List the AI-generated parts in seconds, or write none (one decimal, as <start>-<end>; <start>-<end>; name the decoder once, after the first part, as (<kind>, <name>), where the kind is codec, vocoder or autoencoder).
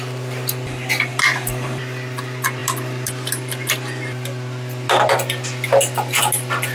1.1-1.8 (vocoder, BigVGAN v2)